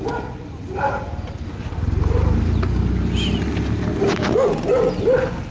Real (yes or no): yes